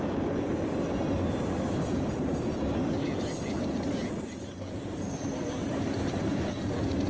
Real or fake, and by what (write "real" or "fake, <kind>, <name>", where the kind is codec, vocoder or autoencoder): real